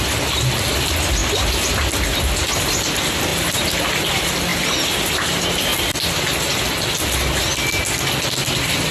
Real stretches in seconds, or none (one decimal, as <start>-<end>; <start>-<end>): 0.0-3.3; 4.1-4.5; 5.1-8.9